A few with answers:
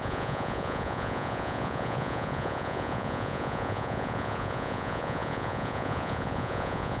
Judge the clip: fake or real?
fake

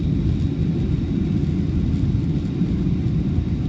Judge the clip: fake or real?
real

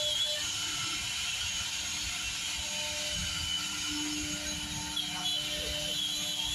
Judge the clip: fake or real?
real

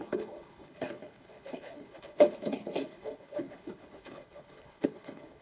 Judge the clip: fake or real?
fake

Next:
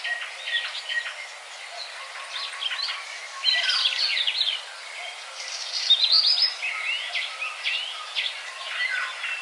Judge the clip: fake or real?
real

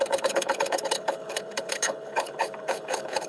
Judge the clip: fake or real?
fake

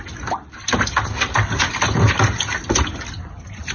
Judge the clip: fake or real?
real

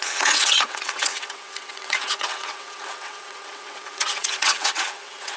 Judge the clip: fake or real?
fake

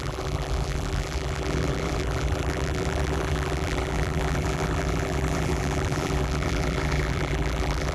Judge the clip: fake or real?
fake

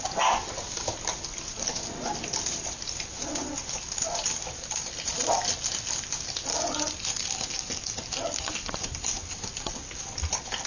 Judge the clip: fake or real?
real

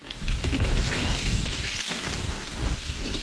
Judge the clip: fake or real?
fake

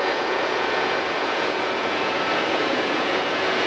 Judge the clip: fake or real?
fake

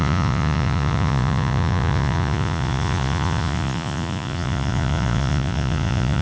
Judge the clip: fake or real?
fake